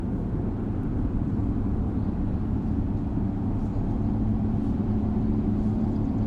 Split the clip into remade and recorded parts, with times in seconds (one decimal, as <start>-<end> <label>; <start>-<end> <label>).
0.0-1.4 remade; 1.4-4.4 recorded; 4.4-6.3 remade